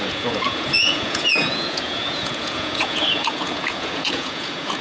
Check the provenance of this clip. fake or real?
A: fake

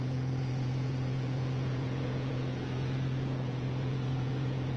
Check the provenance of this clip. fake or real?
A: fake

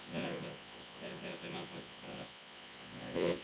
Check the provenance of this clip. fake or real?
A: fake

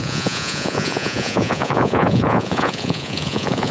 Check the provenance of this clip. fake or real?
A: fake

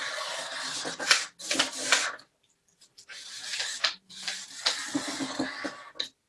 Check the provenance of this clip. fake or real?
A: real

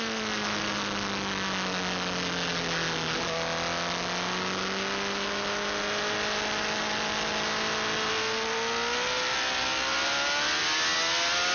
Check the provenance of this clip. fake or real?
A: real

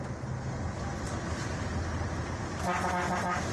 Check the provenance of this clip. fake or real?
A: real